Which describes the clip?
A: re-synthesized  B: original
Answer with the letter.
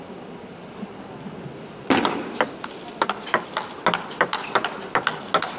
B